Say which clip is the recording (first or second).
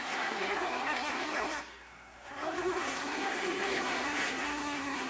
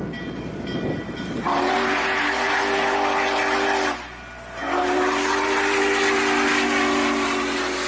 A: second